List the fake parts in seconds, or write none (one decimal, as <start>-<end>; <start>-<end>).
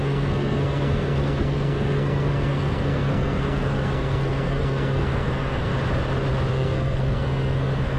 0.0-5.7; 6.5-8.0